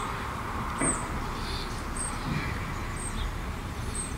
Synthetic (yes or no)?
no